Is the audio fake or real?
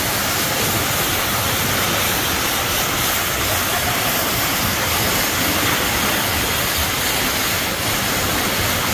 real